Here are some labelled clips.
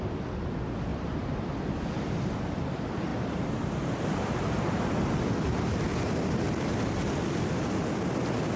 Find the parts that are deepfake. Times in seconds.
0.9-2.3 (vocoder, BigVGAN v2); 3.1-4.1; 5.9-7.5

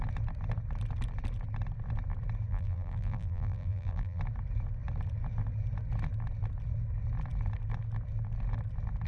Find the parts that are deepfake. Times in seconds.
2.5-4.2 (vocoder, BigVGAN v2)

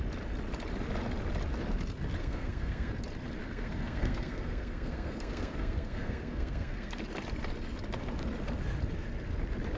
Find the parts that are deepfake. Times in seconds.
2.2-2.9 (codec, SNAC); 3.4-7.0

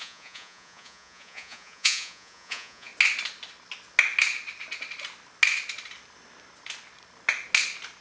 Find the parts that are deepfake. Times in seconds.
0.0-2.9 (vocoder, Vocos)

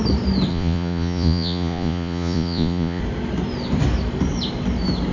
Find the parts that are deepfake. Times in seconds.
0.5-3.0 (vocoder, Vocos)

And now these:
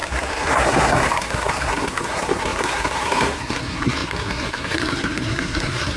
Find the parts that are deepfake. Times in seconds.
0.0-6.0 (codec, SNAC)

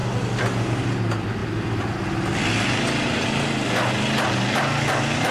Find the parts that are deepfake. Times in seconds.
none